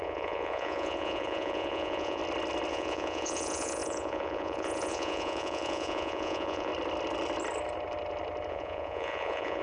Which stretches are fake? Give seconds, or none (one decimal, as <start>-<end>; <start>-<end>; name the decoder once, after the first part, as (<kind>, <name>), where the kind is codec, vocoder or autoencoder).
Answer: 0.0-2.2 (vocoder, Vocos); 2.7-6.7; 8.5-9.6